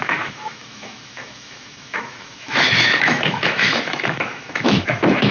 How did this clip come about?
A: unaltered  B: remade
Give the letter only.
B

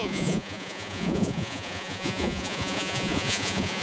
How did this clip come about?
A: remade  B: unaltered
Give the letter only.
A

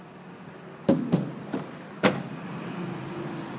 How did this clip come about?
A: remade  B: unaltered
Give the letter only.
B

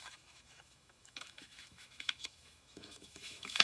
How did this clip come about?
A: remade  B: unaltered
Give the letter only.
A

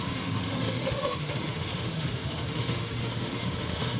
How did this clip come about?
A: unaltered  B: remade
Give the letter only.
B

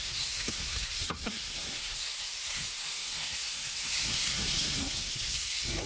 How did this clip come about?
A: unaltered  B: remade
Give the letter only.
B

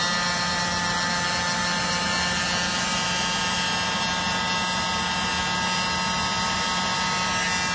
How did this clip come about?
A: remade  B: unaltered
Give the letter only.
B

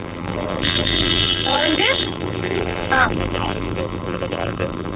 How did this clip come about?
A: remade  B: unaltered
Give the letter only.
A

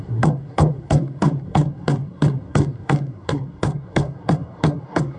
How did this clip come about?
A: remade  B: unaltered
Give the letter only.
A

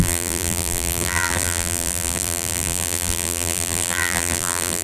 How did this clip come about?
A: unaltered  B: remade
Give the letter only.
B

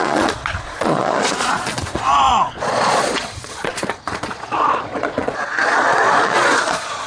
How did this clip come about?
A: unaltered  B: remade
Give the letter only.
B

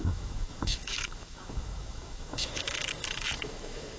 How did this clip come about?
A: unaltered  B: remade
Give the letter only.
B